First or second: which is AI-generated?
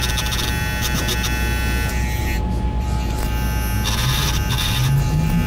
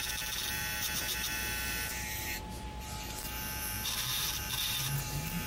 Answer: second